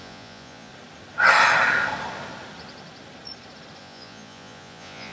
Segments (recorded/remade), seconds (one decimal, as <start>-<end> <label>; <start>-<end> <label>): 0.0-0.7 remade; 0.7-3.8 recorded; 3.8-5.1 remade